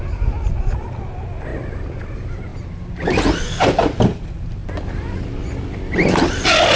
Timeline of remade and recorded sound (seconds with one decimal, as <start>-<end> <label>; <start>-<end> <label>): 0.0-6.8 recorded